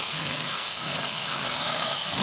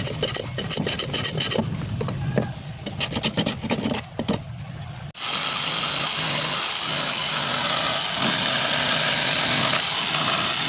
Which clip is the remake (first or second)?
first